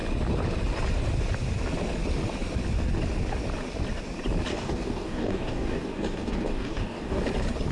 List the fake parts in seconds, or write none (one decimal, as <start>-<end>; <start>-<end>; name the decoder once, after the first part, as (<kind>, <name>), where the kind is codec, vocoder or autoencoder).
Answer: 4.5-7.2 (codec, DAC)